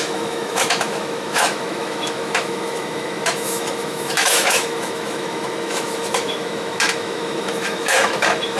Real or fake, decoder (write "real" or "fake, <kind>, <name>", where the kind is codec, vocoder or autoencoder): fake, autoencoder, DAC-VAE